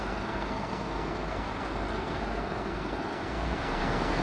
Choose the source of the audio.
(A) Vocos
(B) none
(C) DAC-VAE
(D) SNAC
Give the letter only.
D